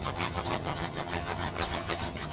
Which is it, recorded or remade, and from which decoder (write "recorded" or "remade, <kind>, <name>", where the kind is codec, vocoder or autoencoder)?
remade, vocoder, HiFi-GAN